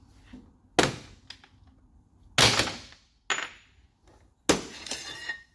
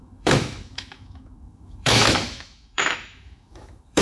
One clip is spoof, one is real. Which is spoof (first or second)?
second